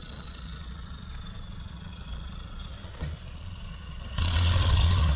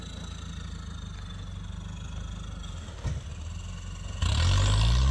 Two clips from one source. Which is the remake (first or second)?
first